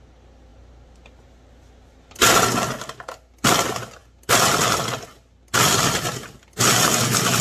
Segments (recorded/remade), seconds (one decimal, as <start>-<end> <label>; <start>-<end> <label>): 0.0-7.4 recorded